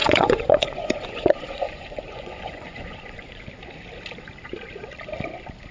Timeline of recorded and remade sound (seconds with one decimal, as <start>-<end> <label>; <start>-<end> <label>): 0.0-3.4 remade; 3.4-5.7 recorded